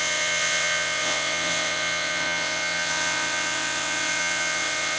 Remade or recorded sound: remade